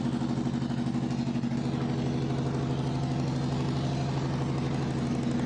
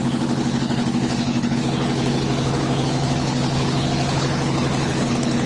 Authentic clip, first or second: first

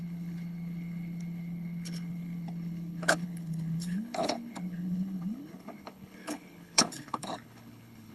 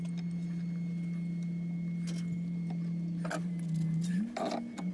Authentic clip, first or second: second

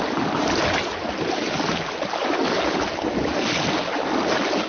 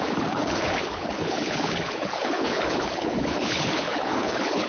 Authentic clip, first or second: first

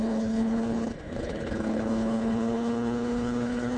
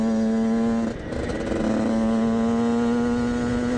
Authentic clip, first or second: second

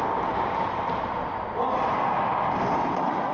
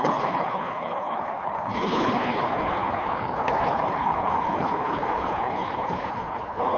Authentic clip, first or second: first